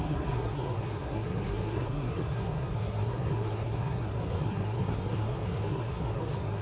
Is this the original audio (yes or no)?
no